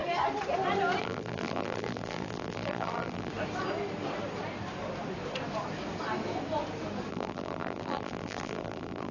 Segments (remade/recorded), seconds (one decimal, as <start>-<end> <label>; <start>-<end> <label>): 0.0-1.0 recorded; 1.0-3.3 remade; 3.3-7.1 recorded; 7.1-9.1 remade